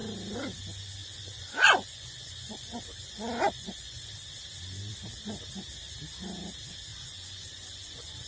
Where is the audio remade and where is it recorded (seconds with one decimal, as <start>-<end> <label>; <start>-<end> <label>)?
0.0-1.0 recorded; 1.0-4.1 remade; 4.1-6.9 recorded; 6.9-8.3 remade

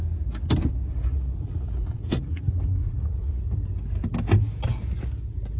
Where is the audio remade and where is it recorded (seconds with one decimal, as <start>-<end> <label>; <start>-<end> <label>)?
0.0-0.8 recorded; 0.8-2.4 remade; 2.4-2.8 recorded; 2.8-3.4 remade; 3.4-5.6 recorded

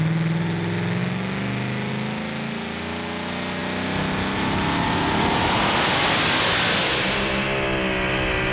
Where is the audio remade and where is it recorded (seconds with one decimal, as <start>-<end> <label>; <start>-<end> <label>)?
0.0-8.5 recorded

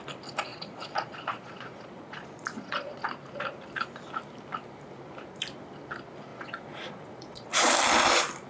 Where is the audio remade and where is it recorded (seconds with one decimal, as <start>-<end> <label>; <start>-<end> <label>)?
0.0-0.5 recorded; 0.5-3.0 remade; 3.0-6.3 recorded; 6.3-7.7 remade; 7.7-8.5 recorded

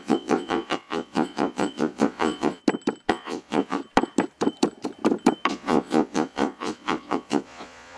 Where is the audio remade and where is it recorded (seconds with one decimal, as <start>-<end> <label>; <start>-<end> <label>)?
0.0-2.6 remade; 2.6-3.1 recorded; 3.1-3.8 remade; 3.8-5.5 recorded; 5.5-8.0 remade

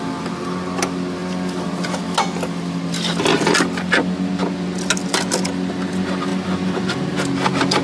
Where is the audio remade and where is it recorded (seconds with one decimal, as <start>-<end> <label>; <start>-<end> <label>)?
0.0-7.8 recorded

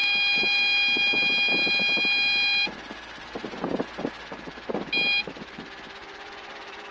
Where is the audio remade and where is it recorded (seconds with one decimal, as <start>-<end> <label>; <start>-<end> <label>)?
0.0-6.0 recorded; 6.0-6.9 remade